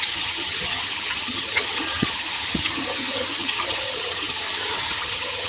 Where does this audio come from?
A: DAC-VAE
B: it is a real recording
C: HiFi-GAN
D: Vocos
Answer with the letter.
C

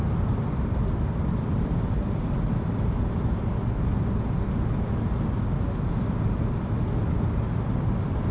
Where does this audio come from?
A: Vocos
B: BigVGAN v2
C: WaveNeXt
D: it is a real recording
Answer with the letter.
D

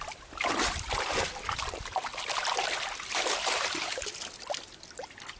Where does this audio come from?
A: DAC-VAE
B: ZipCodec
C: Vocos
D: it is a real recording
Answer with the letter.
D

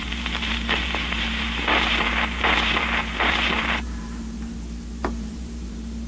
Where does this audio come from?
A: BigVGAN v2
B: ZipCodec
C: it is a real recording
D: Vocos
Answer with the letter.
A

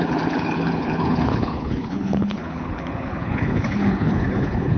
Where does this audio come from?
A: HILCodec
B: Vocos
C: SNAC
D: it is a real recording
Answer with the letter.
A